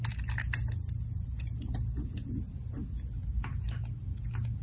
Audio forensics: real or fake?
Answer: real